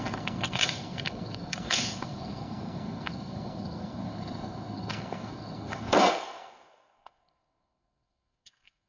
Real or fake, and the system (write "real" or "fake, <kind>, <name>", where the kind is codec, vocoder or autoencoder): fake, codec, SNAC